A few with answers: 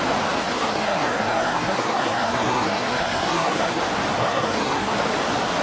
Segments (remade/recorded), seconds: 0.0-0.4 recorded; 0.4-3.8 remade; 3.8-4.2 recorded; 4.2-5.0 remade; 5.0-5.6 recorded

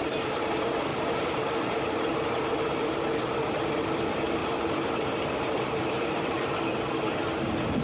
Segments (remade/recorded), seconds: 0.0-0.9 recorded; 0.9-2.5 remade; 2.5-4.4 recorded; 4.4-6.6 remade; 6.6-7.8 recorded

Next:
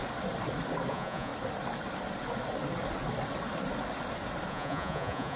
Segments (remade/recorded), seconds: 0.0-0.9 recorded; 0.9-1.3 remade; 1.3-4.5 recorded; 4.5-5.4 remade